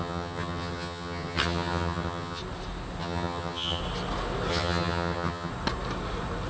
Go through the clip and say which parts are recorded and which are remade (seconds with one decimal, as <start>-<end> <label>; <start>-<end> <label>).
0.0-2.4 remade; 2.4-3.0 recorded; 3.0-3.8 remade; 3.8-4.5 recorded; 4.5-5.5 remade; 5.5-6.5 recorded